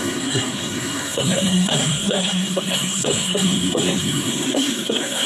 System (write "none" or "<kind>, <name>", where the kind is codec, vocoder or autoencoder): codec, SNAC